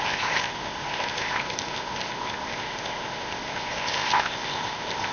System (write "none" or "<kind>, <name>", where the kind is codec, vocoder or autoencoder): codec, ZipCodec